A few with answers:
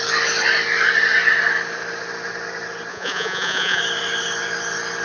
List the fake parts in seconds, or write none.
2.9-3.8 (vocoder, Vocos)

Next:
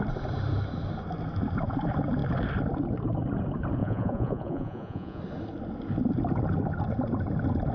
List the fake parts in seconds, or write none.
3.8-5.2 (vocoder, Vocos)

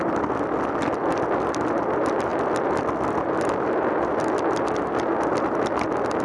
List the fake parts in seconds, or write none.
none

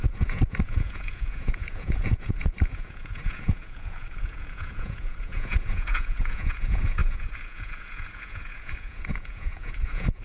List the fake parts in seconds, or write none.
0.0-10.2 (vocoder, Vocos)

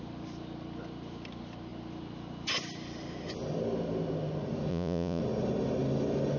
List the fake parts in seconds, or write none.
4.7-5.2 (vocoder, Vocos)

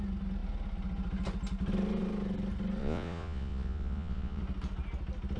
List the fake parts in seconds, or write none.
2.8-4.4 (vocoder, Vocos)